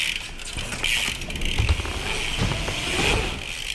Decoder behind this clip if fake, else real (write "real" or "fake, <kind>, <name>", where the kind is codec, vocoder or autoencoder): real